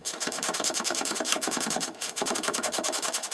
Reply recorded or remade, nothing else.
remade